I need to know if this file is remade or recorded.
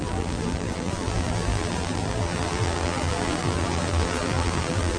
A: remade